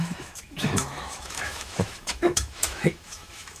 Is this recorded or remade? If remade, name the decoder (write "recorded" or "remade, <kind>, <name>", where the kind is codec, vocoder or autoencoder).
remade, autoencoder, DAC-VAE